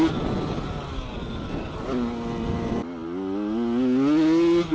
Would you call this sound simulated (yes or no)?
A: no